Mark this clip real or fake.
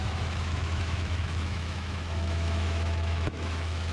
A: fake